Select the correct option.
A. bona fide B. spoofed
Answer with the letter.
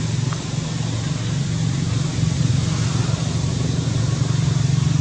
A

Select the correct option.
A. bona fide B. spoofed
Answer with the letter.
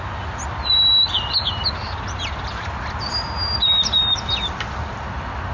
A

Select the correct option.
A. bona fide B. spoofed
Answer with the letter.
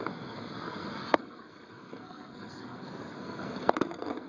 B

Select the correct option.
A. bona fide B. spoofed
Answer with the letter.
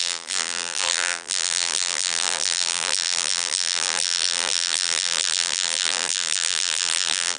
B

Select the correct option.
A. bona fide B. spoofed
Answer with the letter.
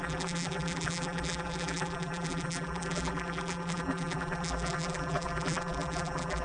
B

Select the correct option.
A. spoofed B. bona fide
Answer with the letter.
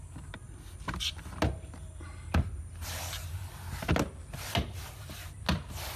B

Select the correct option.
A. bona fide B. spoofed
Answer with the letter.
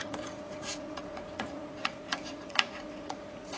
B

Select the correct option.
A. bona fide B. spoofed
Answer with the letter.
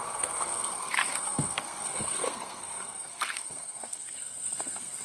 B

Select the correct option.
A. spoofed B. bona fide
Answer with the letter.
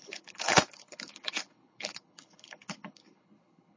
A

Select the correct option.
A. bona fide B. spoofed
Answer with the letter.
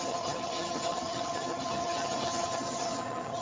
B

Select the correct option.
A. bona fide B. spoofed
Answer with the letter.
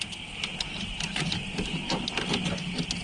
A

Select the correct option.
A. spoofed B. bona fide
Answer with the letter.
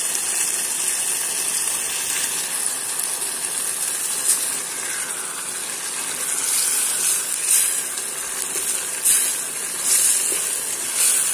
B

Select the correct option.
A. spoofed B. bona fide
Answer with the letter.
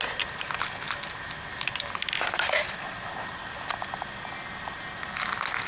B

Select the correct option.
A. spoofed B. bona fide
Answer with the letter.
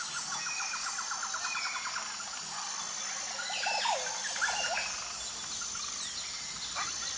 B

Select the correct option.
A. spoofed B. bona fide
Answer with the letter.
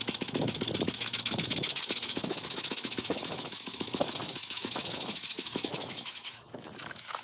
A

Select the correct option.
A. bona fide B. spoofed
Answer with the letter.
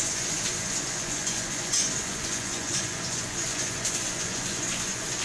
B